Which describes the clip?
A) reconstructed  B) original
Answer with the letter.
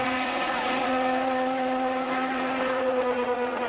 A